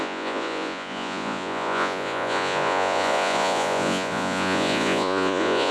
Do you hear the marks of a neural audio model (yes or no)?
yes